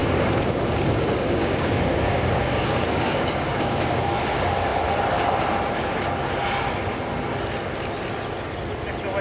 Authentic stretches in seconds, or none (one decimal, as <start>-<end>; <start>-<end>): 4.2-9.2